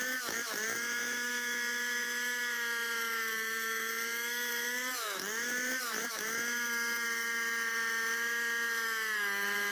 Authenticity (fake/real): fake